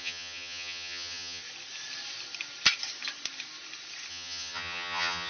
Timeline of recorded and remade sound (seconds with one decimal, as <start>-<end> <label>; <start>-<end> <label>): 0.0-1.4 remade; 1.4-4.1 recorded; 4.1-5.3 remade